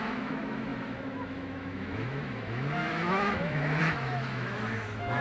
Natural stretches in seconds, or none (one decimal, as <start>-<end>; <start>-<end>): none